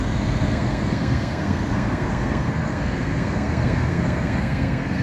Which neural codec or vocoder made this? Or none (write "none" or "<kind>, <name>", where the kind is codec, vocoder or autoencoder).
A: codec, SNAC